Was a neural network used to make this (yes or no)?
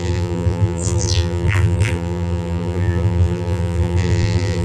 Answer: yes